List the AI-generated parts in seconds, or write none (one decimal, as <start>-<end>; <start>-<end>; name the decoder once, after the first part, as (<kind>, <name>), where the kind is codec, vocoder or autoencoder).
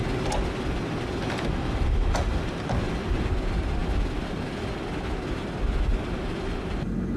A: none